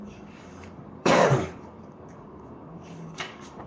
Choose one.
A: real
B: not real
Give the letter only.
B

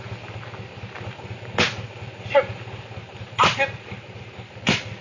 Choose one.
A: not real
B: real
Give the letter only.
B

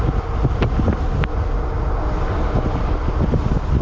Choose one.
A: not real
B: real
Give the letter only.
B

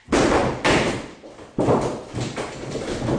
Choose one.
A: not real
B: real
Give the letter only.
B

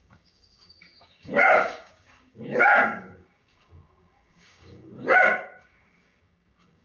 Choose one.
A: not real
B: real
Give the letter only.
A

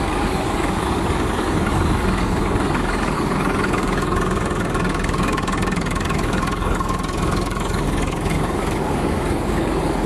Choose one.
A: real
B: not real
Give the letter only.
B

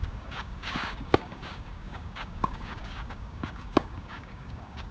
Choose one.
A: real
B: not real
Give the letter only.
B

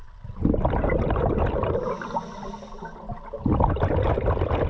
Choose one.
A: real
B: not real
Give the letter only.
A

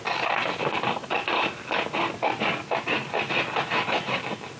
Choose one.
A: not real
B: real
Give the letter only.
B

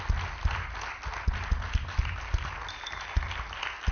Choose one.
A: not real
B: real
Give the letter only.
B